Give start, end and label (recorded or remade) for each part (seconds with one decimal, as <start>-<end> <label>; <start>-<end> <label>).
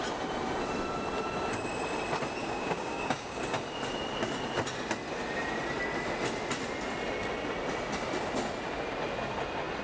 0.0-2.4 recorded; 2.4-3.4 remade; 3.4-9.8 recorded